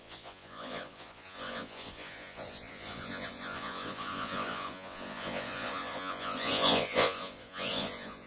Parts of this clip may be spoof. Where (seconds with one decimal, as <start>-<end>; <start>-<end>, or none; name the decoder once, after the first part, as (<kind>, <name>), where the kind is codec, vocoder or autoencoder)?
0.0-8.3 (vocoder, Vocos)